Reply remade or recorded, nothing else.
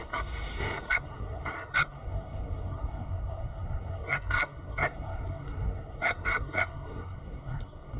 remade